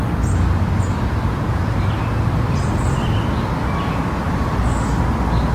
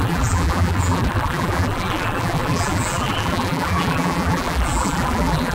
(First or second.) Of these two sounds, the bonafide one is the first